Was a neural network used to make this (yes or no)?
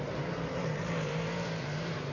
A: yes